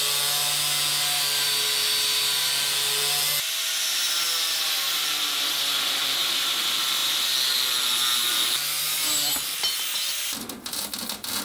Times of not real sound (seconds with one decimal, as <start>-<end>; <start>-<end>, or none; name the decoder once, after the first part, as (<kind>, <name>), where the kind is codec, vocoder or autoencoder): none